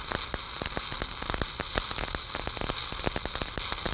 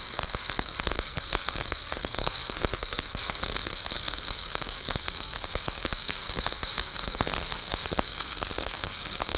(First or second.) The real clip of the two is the first